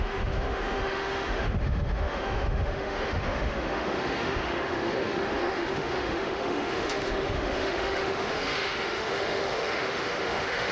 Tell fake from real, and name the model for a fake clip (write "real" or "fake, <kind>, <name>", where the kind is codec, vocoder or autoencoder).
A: fake, autoencoder, DAC-VAE